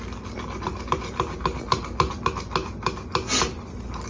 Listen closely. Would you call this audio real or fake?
real